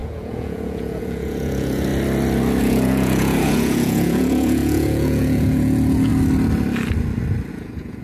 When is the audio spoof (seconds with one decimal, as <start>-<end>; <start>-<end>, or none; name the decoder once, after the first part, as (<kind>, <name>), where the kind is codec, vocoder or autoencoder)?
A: 0.0-1.9 (vocoder, Vocos); 2.6-6.1; 7.5-8.0